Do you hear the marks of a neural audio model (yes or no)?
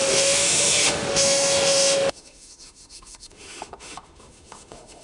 yes